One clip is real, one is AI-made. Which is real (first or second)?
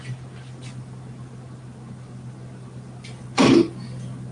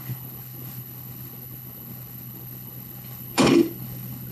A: first